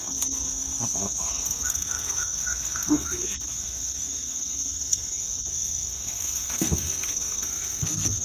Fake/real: fake